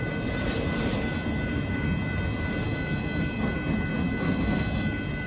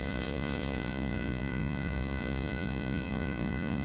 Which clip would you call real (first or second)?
first